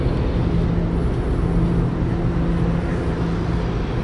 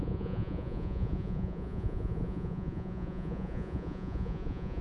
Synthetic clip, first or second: second